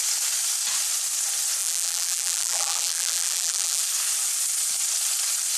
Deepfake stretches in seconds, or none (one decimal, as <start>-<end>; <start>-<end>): 1.6-3.8